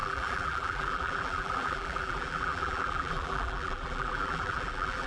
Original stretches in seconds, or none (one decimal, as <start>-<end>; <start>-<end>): none